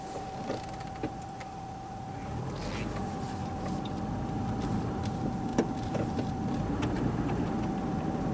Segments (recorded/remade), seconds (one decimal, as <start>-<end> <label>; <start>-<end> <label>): 0.0-8.3 recorded